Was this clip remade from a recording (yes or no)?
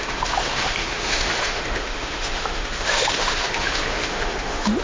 yes